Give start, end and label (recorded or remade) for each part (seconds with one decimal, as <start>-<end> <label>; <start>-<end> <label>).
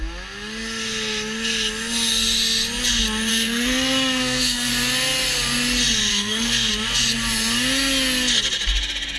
0.0-3.3 recorded; 3.3-4.7 remade; 4.7-6.1 recorded; 6.1-6.7 remade; 6.7-9.2 recorded